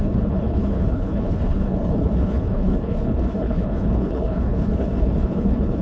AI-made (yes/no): yes